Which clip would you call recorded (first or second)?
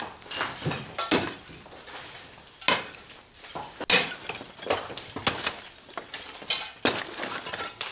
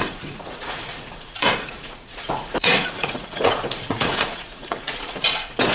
first